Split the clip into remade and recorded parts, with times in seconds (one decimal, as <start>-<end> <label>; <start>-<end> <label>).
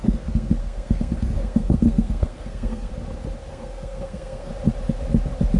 0.0-2.9 remade; 2.9-3.5 recorded; 3.5-4.5 remade; 4.5-5.6 recorded